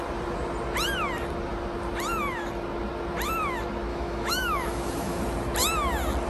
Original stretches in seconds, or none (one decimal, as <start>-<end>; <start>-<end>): 0.0-3.9; 5.2-6.3